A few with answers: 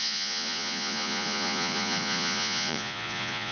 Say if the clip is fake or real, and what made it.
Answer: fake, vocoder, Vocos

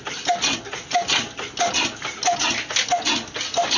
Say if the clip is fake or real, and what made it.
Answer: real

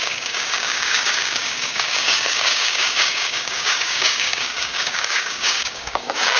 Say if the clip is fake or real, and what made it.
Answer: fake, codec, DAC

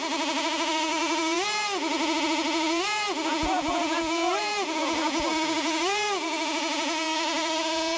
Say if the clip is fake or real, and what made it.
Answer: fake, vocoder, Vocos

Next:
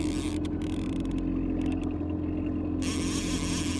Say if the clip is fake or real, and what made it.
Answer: real